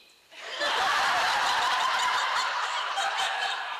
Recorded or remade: remade